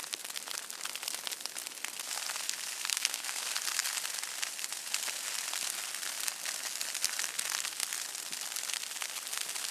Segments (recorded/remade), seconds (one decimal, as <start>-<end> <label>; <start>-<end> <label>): 0.0-2.9 recorded; 2.9-3.4 remade; 3.4-9.7 recorded